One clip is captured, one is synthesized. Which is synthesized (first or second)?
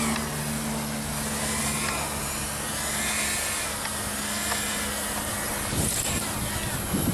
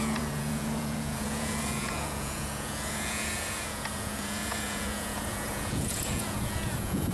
second